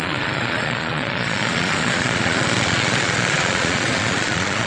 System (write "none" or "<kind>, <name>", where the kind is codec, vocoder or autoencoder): vocoder, Vocos